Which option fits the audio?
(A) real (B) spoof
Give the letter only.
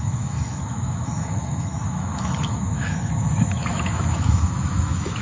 B